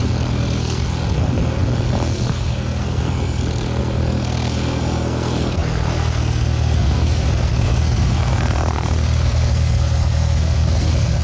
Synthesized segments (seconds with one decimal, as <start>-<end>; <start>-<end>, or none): 0.0-11.2